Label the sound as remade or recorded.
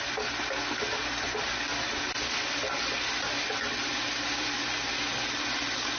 recorded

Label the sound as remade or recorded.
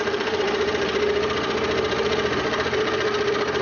remade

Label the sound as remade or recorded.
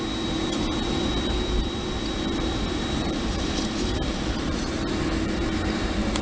remade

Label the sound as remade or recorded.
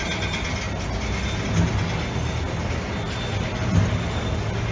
recorded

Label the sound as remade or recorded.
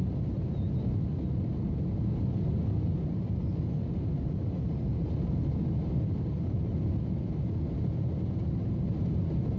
recorded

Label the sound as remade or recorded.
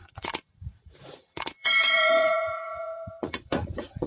remade